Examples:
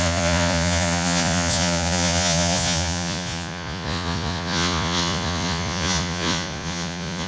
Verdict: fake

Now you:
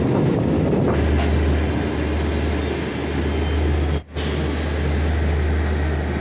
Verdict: real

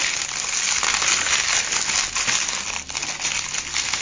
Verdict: real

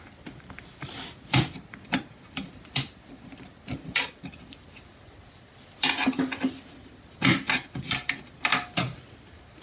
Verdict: real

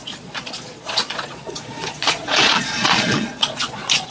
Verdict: fake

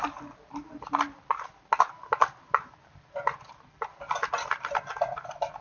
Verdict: real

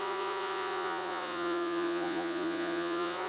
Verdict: fake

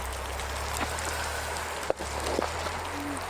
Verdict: real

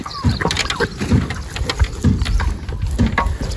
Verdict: real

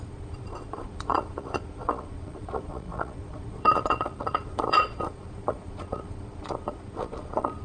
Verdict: fake